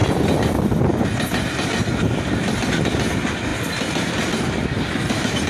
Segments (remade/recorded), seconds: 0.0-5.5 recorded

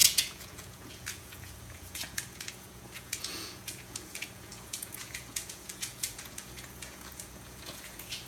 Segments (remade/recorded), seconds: 0.0-8.3 remade